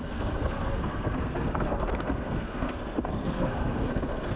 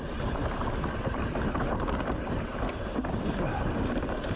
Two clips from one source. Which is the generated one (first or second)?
first